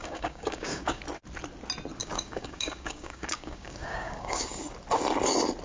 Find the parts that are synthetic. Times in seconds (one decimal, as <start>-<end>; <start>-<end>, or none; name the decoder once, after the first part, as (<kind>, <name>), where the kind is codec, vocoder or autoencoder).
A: 0.0-1.0 (codec, DAC); 2.0-4.6